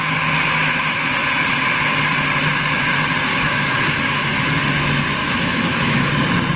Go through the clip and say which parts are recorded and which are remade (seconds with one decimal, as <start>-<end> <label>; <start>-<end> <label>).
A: 0.0-0.6 recorded; 0.6-1.1 remade; 1.1-3.3 recorded; 3.3-4.5 remade; 4.5-5.2 recorded; 5.2-6.1 remade; 6.1-6.6 recorded